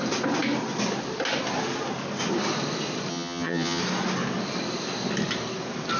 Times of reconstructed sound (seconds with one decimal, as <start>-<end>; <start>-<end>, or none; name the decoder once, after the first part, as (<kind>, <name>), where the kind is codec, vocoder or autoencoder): 3.1-3.8 (vocoder, HiFi-GAN)